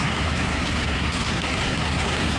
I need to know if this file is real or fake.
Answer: fake